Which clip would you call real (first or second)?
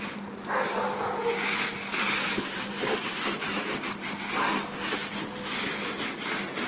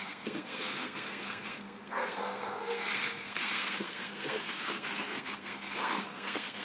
first